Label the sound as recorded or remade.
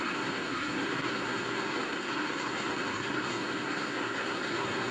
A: remade